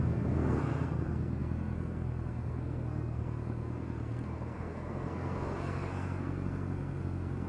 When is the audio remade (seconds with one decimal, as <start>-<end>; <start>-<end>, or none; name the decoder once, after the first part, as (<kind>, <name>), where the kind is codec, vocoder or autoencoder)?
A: 0.0-7.5 (codec, SNAC)